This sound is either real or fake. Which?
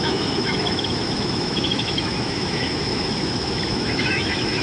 fake